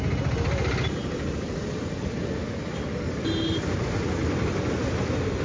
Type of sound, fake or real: real